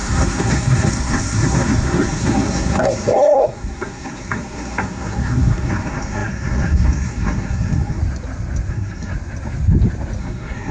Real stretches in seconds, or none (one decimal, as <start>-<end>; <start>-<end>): 8.0-8.7; 9.1-10.2